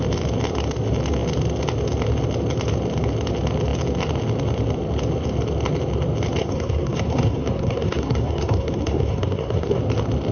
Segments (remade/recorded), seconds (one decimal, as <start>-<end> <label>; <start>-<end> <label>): 0.0-6.4 recorded; 6.4-9.8 remade; 9.8-10.3 recorded